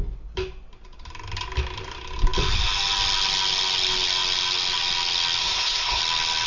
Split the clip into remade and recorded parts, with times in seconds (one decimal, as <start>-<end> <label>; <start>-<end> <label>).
0.0-5.4 recorded; 5.4-6.0 remade; 6.0-6.5 recorded